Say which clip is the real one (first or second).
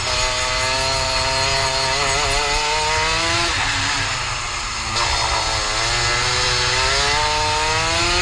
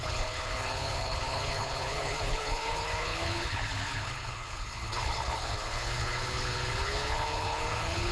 first